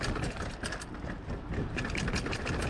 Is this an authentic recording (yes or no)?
yes